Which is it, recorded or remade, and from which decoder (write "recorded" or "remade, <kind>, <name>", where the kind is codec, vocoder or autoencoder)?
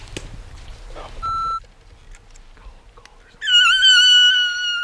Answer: recorded